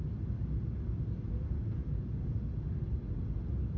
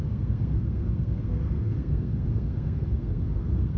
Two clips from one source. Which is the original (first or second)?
first